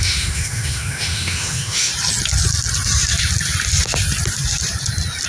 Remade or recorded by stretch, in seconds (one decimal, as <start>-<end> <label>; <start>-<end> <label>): 0.0-1.9 remade; 1.9-5.3 recorded